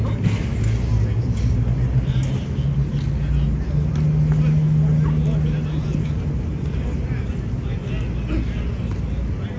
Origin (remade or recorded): recorded